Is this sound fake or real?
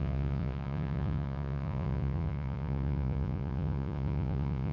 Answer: fake